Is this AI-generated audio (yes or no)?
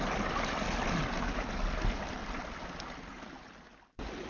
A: no